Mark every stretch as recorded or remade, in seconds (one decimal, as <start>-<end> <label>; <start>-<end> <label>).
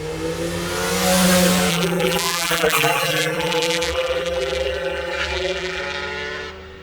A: 0.0-1.7 recorded; 1.7-5.8 remade; 5.8-6.8 recorded